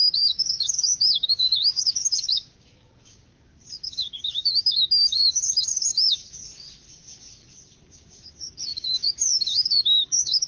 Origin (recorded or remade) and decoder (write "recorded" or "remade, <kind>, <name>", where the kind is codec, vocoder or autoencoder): remade, codec, DAC